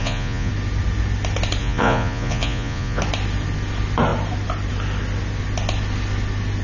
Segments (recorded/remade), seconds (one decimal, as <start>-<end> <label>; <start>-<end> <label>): 0.0-0.5 remade; 0.5-1.6 recorded; 1.6-3.0 remade; 3.0-6.6 recorded